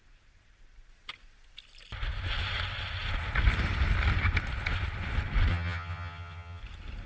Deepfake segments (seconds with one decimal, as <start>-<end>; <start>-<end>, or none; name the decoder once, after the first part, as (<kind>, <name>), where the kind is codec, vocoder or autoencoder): 5.5-6.6 (vocoder, HiFi-GAN)